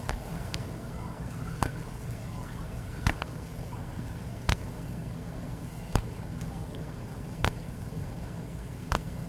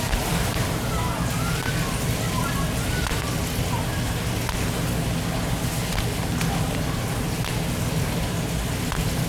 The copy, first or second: first